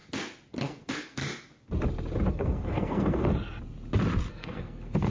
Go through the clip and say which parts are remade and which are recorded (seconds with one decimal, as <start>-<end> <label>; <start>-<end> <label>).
0.0-0.6 recorded; 0.6-1.2 remade; 1.2-2.3 recorded; 2.3-3.3 remade; 3.3-4.3 recorded; 4.3-5.1 remade